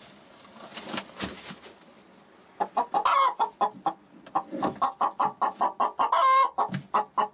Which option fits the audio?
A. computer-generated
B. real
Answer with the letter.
B